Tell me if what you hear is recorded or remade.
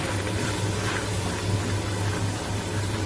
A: recorded